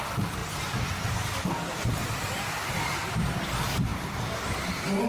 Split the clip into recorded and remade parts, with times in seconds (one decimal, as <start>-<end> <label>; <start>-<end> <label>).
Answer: 0.0-3.0 recorded; 3.0-3.5 remade; 3.5-3.9 recorded; 3.9-4.5 remade; 4.5-5.1 recorded